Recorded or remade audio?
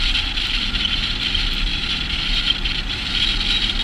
remade